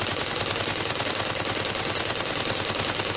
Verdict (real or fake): real